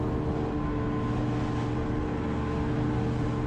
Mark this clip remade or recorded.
recorded